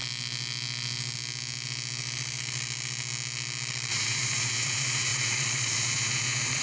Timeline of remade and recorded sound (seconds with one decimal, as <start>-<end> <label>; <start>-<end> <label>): 0.0-3.9 recorded; 3.9-6.6 remade